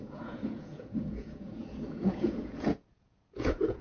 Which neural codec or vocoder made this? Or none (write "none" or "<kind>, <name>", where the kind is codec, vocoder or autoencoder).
vocoder, Vocos